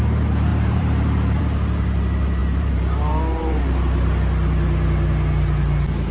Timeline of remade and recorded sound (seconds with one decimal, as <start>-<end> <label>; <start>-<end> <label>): 0.0-0.5 recorded; 0.5-1.4 remade; 1.4-2.4 recorded; 2.4-3.6 remade; 3.6-6.1 recorded